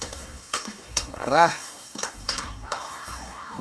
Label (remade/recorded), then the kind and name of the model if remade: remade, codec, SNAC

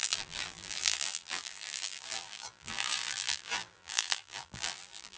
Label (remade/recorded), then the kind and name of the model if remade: remade, vocoder, BigVGAN v2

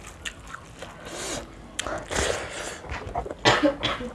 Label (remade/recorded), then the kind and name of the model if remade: recorded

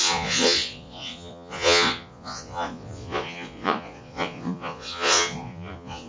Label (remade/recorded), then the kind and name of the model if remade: remade, vocoder, Vocos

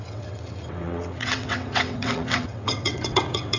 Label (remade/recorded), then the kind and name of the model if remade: remade, vocoder, WaveNeXt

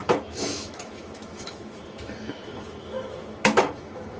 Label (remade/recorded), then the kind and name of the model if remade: remade, autoencoder, DAC-VAE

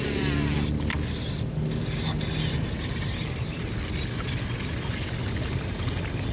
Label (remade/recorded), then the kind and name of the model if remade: recorded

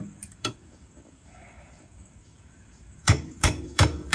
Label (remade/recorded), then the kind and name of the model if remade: remade, codec, DAC